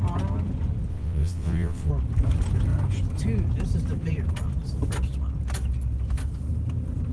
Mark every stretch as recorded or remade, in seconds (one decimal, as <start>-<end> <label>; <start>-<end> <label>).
0.0-0.9 recorded; 0.9-1.9 remade; 1.9-7.1 recorded